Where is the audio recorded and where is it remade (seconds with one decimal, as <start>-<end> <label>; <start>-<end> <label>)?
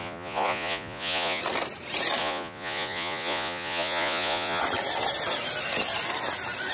0.0-1.4 remade; 1.4-2.2 recorded; 2.2-4.6 remade; 4.6-6.7 recorded